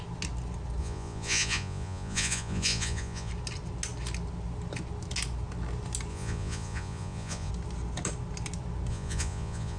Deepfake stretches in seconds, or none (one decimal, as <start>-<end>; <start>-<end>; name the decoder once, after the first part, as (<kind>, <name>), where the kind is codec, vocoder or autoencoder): 0.8-3.3 (vocoder, Vocos); 6.1-7.5; 8.9-9.8